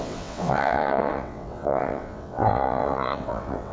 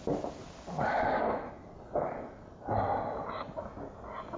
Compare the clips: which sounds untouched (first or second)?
second